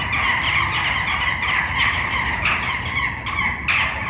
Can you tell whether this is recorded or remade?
recorded